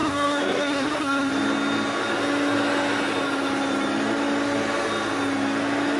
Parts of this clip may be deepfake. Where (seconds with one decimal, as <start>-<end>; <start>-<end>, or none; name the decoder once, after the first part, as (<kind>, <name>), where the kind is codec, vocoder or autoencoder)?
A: 0.0-1.3 (codec, SNAC)